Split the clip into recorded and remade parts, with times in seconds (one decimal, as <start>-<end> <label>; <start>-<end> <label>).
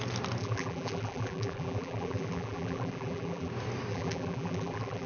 0.0-0.4 recorded; 0.4-3.5 remade; 3.5-3.9 recorded; 3.9-5.1 remade